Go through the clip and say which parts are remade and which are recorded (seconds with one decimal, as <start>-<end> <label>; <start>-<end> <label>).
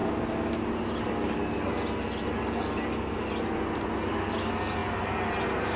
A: 0.0-5.8 recorded